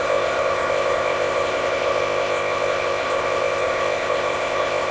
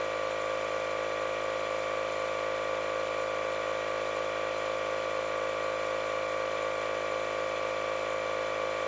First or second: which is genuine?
second